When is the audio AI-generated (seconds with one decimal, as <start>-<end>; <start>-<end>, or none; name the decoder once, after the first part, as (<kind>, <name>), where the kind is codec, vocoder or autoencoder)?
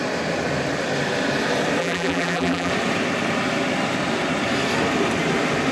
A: 1.8-2.7 (vocoder, BigVGAN v2)